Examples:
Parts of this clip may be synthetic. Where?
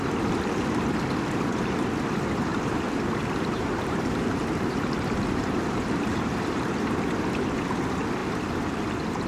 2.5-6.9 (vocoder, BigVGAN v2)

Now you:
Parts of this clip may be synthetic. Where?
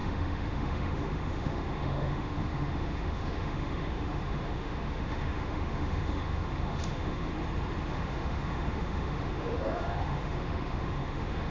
0.0-7.3 (autoencoder, DAC-VAE); 7.9-11.5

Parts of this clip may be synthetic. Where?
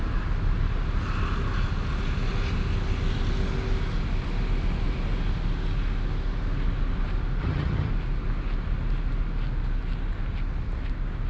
7.4-7.9 (vocoder, HiFi-GAN)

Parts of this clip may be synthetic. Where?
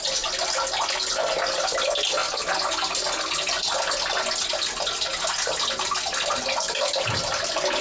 none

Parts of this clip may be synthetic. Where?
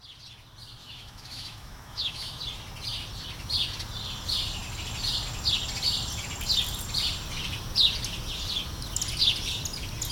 0.8-2.4 (autoencoder, DAC-VAE)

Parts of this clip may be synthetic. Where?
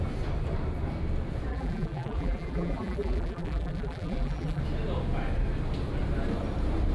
1.5-4.6 (vocoder, BigVGAN v2)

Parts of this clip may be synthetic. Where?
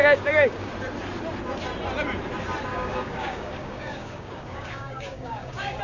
0.0-0.7 (codec, DAC); 2.7-5.8